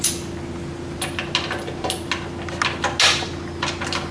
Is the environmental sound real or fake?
real